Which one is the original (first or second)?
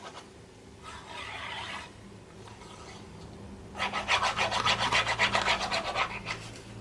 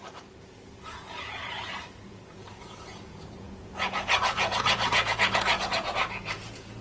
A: first